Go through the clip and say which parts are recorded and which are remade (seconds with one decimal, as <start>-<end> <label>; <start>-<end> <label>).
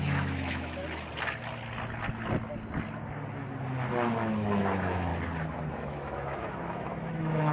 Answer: 0.0-0.8 remade; 0.8-3.9 recorded; 3.9-5.1 remade; 5.1-5.7 recorded; 5.7-7.5 remade